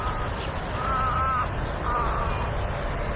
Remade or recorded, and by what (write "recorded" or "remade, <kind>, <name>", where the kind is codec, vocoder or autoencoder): recorded